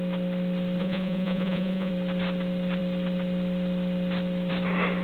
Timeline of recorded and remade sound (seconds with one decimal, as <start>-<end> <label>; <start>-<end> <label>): 0.0-0.8 recorded; 0.8-1.9 remade; 1.9-5.0 recorded